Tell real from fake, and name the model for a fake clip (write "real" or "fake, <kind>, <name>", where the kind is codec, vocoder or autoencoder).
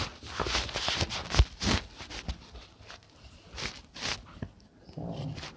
real